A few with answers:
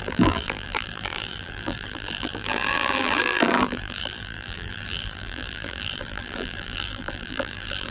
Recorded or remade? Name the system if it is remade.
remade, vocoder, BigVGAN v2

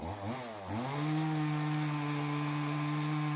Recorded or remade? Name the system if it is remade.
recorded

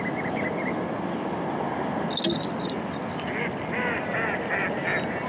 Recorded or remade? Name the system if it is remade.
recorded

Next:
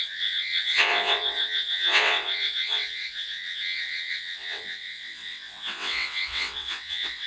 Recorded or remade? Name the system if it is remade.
remade, vocoder, WaveNeXt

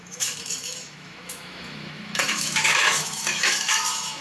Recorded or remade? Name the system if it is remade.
remade, autoencoder, DAC-VAE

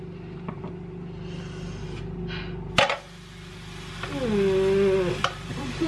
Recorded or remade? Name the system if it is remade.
recorded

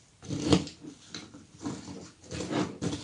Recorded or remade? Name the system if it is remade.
recorded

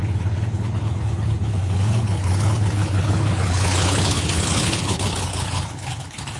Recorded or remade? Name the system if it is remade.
remade, codec, HILCodec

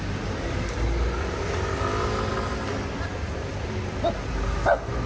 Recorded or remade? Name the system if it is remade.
remade, vocoder, BigVGAN v2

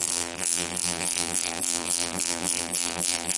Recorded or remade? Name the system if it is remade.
remade, vocoder, BigVGAN v2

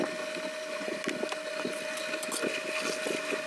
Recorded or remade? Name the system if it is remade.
recorded